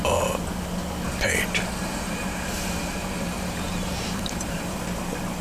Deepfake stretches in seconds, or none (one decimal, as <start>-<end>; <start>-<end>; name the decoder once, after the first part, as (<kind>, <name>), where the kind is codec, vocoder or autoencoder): 1.8-4.8 (vocoder, BigVGAN v2)